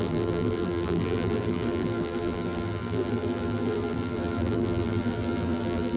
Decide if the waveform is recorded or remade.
remade